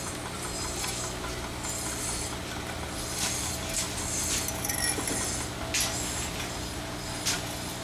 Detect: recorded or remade recorded